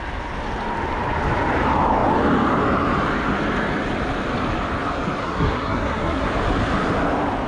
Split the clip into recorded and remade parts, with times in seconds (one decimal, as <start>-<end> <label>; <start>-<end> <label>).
0.0-5.2 recorded; 5.2-6.3 remade; 6.3-7.5 recorded